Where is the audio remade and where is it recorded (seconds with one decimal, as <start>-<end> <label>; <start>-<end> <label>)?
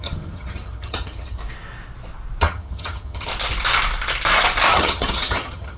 0.0-1.4 remade; 1.4-2.4 recorded; 2.4-3.3 remade; 3.3-4.7 recorded; 4.7-5.8 remade